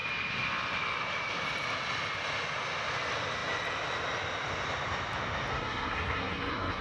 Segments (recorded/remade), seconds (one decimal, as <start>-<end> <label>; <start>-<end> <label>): 0.0-5.5 recorded; 5.5-6.8 remade